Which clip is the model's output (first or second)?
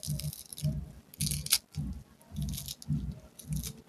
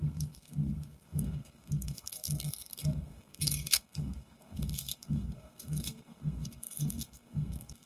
second